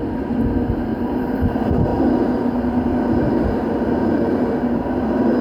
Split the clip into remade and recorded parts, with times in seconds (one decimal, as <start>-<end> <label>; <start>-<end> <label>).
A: 0.0-0.9 recorded; 0.9-1.5 remade; 1.5-5.4 recorded